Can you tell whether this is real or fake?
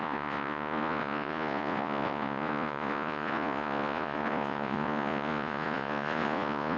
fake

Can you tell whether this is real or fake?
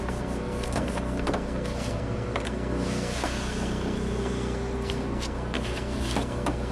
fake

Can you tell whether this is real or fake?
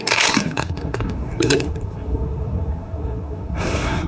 fake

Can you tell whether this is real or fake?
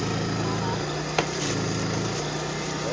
real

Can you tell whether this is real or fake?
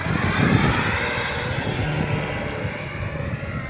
real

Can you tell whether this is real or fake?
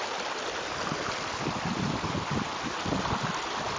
real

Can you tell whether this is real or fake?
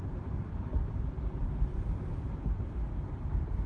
fake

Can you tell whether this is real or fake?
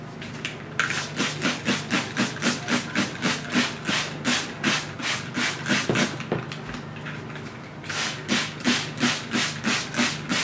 real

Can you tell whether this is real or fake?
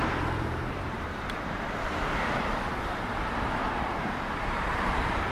fake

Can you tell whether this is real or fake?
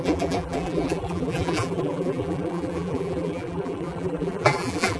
fake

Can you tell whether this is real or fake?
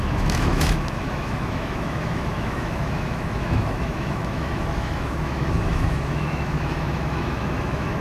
fake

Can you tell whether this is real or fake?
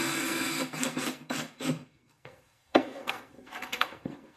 fake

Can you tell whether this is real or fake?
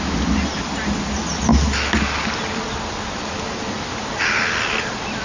real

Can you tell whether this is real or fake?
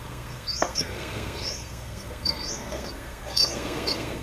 fake